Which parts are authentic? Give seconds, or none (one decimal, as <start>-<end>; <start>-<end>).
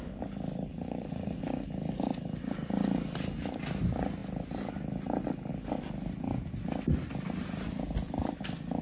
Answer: 0.0-0.7; 1.4-8.8